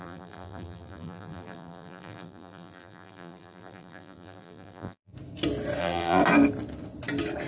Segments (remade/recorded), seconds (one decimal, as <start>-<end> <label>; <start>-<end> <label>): 0.0-5.1 remade; 5.1-5.8 recorded; 5.8-6.2 remade; 6.2-7.5 recorded